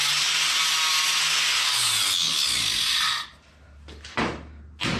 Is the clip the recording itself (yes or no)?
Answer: yes